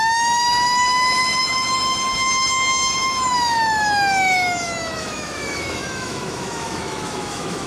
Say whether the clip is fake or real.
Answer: fake